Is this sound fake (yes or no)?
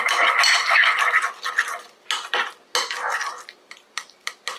no